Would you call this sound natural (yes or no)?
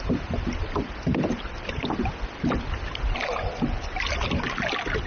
yes